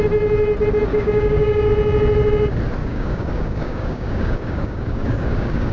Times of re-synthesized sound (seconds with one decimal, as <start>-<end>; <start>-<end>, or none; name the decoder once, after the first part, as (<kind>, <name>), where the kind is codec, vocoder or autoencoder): 0.9-1.7 (codec, DAC); 2.8-5.7